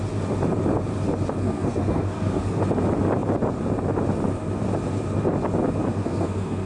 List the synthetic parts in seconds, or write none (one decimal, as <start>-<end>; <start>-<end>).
1.4-2.6; 5.9-6.7